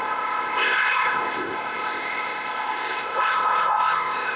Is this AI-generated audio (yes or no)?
yes